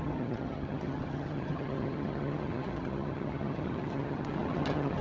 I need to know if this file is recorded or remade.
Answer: remade